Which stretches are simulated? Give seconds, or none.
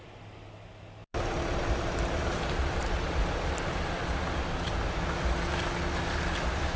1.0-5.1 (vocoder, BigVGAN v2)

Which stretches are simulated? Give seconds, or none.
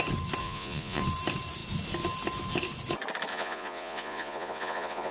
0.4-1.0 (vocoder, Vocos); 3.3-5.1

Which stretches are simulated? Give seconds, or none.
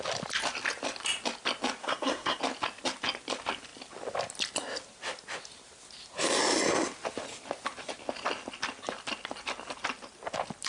1.8-2.4 (codec, SNAC)